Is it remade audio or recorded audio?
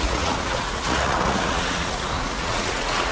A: remade